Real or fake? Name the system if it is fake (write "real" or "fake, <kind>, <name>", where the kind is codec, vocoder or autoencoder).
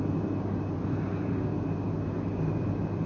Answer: real